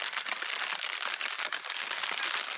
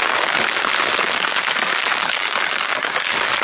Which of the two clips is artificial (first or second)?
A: second